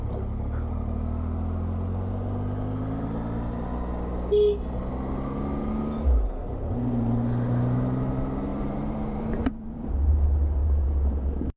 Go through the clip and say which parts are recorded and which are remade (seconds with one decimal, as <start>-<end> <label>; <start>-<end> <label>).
0.0-8.5 recorded; 8.5-9.9 remade; 9.9-10.6 recorded; 10.6-11.1 remade; 11.1-11.6 recorded